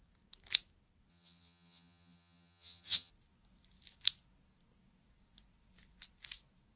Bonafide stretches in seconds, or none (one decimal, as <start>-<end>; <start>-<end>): 0.0-1.1; 3.1-6.8